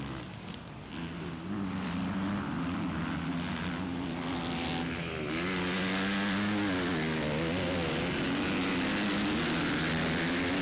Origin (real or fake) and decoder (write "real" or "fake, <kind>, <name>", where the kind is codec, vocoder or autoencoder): real